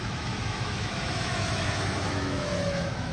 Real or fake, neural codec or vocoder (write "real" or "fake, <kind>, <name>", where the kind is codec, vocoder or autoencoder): fake, autoencoder, DAC-VAE